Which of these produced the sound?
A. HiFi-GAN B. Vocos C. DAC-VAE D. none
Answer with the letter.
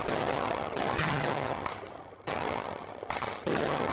A